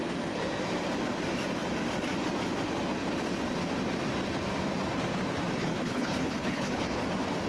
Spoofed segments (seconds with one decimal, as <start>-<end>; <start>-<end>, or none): 5.6-7.0